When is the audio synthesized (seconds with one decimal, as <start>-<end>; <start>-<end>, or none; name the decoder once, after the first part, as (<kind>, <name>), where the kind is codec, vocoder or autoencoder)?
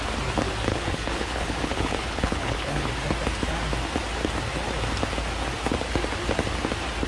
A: 0.7-2.9 (codec, HILCodec)